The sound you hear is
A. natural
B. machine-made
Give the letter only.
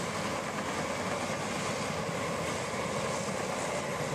A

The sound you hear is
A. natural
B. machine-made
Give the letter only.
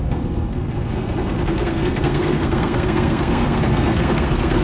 B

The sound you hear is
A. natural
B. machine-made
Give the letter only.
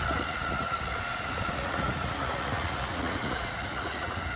B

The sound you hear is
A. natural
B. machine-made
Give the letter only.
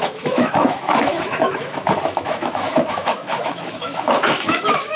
B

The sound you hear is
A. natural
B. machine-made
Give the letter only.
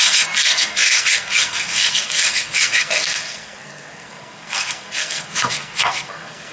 B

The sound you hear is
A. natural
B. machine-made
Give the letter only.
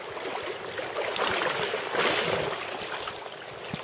A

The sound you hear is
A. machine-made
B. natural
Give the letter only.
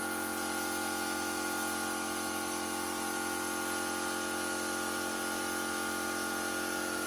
B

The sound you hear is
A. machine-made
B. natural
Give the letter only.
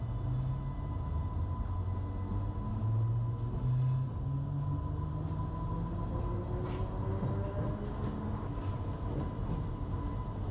B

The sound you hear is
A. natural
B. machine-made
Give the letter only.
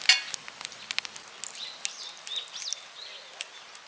A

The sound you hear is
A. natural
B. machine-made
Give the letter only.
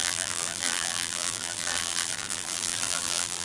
B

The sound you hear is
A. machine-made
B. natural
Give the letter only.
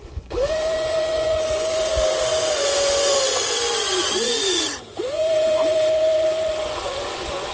A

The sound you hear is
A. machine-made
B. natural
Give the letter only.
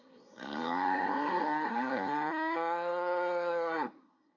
A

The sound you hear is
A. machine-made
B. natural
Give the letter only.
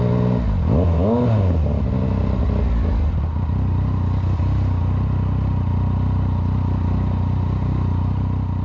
B